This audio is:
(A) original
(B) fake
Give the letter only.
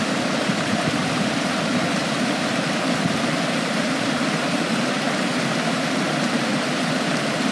B